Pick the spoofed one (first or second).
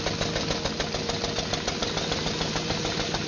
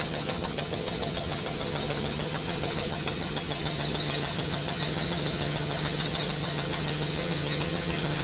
second